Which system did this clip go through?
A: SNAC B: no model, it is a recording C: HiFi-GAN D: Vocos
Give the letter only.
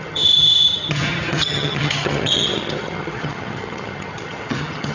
C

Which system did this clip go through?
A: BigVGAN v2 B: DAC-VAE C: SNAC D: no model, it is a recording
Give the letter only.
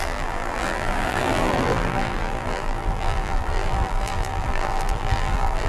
A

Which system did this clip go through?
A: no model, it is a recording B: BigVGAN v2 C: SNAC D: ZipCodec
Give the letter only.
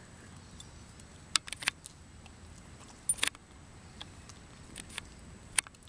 A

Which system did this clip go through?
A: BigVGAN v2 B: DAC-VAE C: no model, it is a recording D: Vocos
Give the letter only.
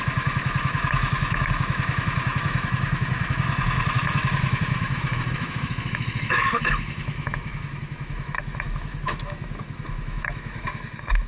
B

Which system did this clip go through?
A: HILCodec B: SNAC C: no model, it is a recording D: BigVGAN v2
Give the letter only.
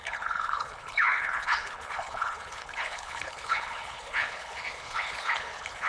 A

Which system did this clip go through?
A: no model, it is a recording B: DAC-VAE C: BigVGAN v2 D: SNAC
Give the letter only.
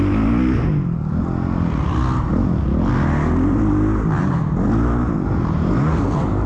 A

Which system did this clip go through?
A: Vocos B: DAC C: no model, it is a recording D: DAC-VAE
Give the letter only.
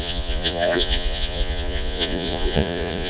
A